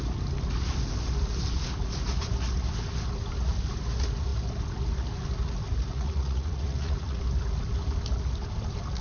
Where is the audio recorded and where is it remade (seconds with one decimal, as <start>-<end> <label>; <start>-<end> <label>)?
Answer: 0.0-5.9 recorded; 5.9-7.2 remade; 7.2-9.0 recorded